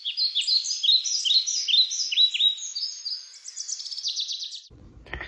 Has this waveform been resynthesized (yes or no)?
no